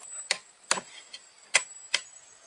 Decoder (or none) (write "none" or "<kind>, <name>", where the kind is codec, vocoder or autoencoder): none